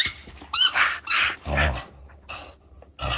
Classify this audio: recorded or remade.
recorded